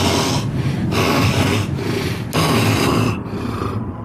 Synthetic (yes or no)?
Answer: no